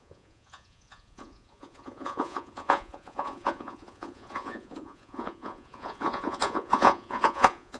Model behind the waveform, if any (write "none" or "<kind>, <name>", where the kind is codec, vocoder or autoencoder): vocoder, Vocos